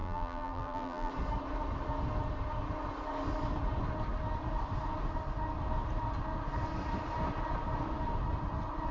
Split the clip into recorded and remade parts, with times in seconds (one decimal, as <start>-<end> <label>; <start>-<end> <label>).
0.0-1.1 remade; 1.1-8.9 recorded